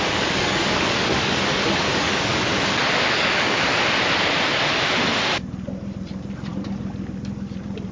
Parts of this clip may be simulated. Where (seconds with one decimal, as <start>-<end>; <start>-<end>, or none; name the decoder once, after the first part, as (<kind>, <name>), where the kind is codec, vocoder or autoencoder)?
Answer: 0.0-2.3 (codec, DAC); 3.1-3.7